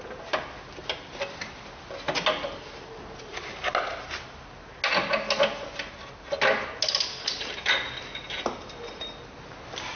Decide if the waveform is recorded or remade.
recorded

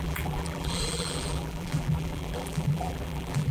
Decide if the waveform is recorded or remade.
remade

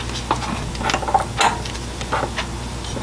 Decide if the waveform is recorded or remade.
recorded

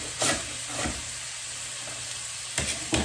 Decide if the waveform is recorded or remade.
recorded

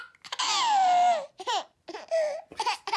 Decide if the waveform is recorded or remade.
recorded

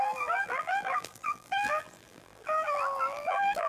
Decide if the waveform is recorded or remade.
remade